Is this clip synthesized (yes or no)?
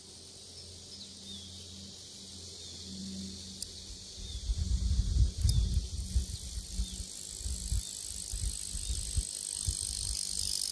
no